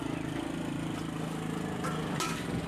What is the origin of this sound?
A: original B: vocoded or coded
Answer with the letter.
A